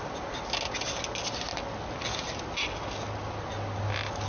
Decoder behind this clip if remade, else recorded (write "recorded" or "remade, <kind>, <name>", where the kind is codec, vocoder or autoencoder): recorded